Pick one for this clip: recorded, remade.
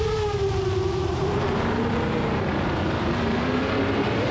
remade